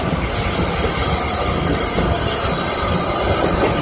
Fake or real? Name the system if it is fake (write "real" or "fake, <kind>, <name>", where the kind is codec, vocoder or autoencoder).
real